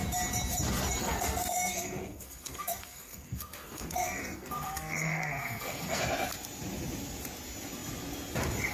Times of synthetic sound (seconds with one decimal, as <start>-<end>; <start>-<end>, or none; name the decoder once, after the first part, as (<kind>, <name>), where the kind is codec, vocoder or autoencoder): 1.0-6.0 (codec, SNAC)